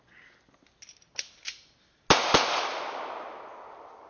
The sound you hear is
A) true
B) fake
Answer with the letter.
A